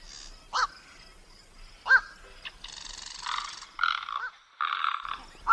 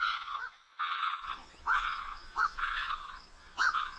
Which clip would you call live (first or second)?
first